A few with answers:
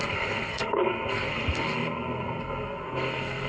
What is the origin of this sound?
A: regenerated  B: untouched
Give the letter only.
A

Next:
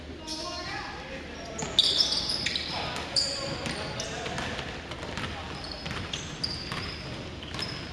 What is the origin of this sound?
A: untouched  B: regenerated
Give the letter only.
A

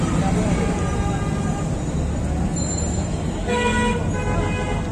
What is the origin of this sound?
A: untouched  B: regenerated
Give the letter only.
A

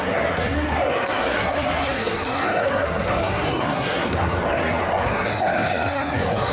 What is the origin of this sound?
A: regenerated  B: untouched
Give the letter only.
A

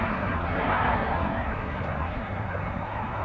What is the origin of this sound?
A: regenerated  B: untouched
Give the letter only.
A